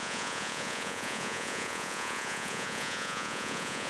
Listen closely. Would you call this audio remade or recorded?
remade